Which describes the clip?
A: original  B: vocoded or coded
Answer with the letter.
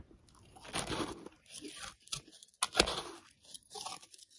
A